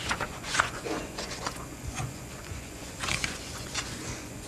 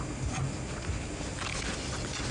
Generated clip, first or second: first